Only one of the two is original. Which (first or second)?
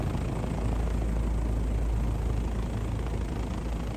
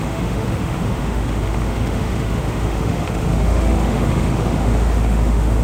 first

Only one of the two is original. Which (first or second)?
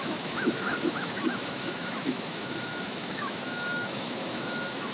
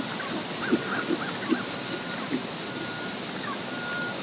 second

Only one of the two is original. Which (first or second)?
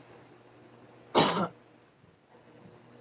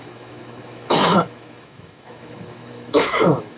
first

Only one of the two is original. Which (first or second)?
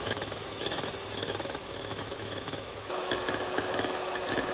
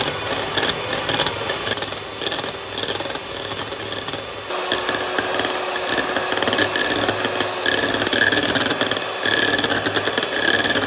second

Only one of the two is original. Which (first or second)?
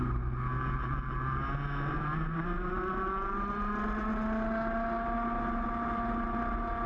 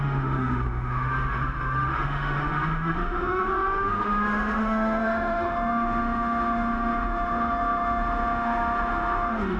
first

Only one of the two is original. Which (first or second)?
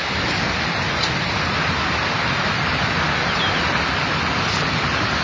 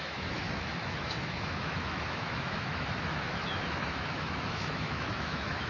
first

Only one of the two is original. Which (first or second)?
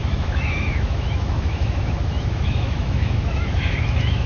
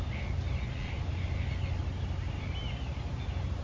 second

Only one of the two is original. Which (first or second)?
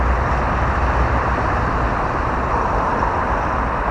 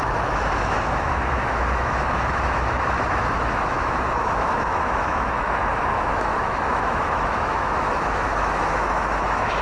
first